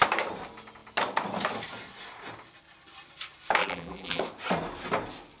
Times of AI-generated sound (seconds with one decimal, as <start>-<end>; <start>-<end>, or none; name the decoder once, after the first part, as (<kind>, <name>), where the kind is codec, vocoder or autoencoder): 3.6-4.2 (vocoder, BigVGAN v2)